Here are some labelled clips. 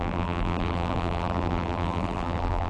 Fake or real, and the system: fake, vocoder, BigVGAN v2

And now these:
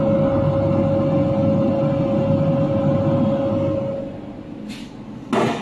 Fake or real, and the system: real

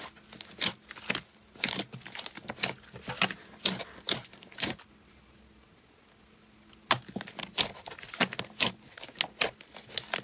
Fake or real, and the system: real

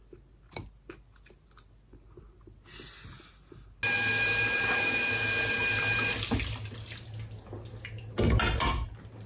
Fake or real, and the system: real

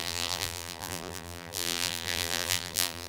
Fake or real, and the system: fake, vocoder, BigVGAN v2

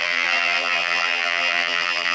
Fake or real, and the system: fake, vocoder, BigVGAN v2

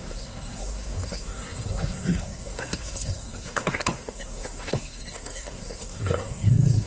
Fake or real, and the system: fake, codec, SNAC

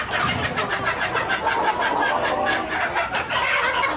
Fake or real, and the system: real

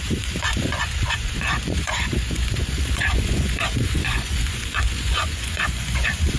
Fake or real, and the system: fake, vocoder, Vocos